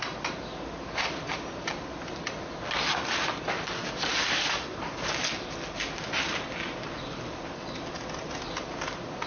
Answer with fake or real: real